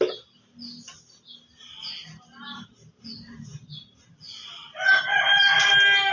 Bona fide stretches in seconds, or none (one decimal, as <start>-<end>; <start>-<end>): 0.0-6.1